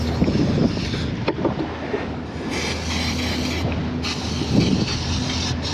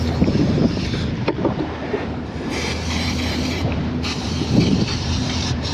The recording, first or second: first